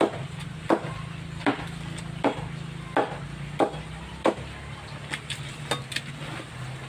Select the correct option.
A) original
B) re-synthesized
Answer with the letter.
A